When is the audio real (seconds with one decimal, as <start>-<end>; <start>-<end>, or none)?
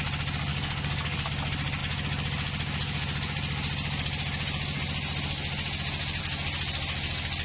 0.0-0.5; 1.3-7.4